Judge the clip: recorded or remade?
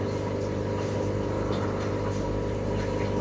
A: recorded